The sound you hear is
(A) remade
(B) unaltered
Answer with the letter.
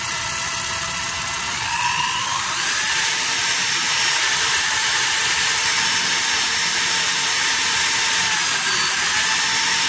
B